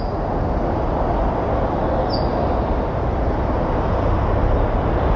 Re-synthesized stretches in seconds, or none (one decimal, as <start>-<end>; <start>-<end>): none